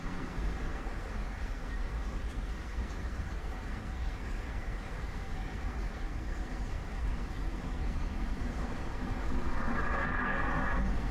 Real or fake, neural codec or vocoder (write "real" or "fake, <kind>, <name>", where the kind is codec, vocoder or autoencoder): fake, codec, SNAC